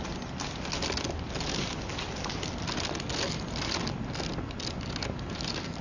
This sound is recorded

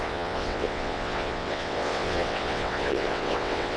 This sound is remade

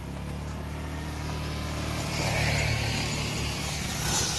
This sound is recorded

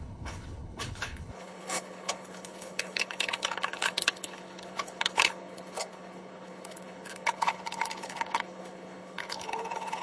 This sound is remade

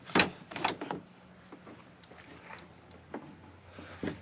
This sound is recorded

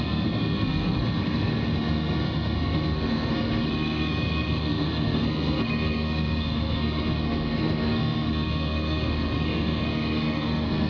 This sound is remade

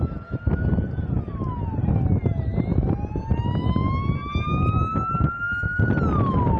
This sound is recorded